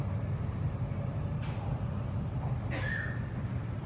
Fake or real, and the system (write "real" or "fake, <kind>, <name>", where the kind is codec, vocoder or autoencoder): real